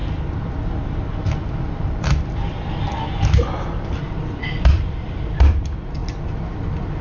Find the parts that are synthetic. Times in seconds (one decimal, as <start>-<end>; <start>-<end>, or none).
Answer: 4.2-6.0